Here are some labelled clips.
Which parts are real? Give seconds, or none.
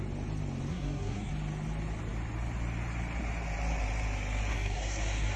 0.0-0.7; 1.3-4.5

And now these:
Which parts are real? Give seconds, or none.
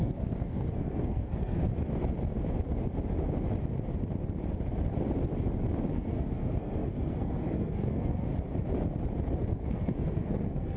1.7-5.9; 8.3-9.4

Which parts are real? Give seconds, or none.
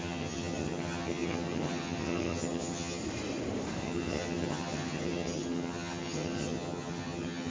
3.0-3.8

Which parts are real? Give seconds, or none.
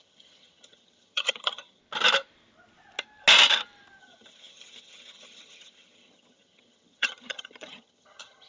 1.8-4.0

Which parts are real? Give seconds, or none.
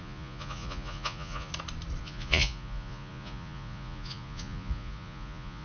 1.5-2.0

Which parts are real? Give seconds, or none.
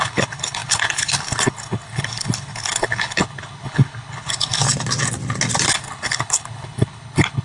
4.6-5.7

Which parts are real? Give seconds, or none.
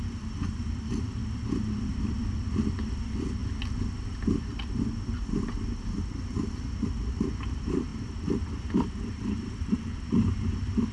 1.2-3.0; 3.4-7.1; 7.9-8.5